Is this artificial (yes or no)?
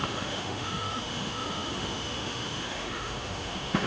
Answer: yes